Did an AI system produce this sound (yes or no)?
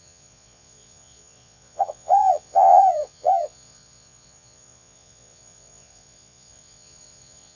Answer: yes